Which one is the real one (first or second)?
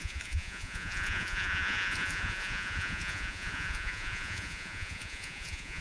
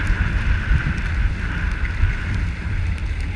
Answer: second